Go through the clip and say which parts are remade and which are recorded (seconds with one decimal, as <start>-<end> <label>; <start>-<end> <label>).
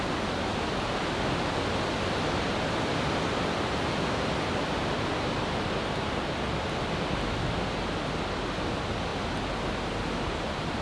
0.0-10.8 recorded